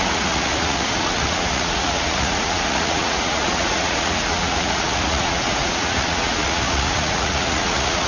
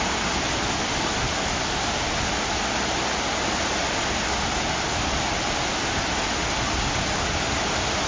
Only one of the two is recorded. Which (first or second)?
second